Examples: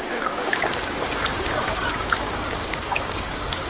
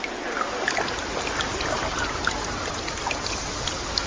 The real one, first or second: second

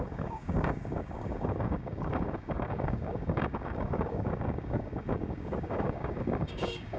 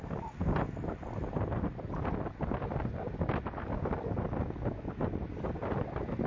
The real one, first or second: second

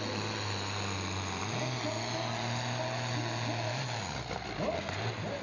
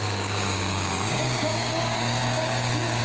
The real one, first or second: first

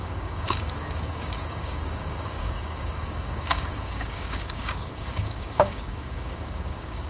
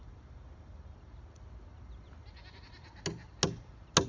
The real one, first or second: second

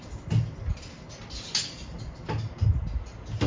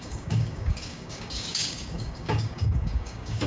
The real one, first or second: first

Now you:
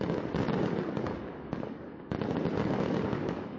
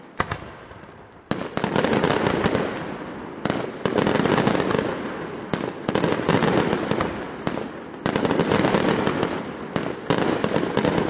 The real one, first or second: second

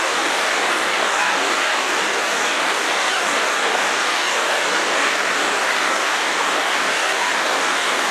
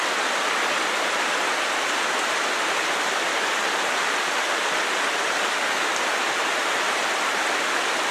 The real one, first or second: second